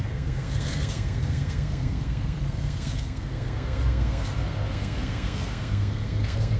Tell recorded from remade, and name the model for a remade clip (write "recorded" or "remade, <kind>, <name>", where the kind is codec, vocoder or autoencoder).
remade, codec, SNAC